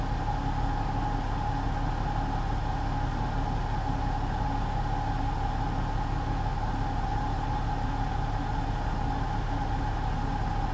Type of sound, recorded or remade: recorded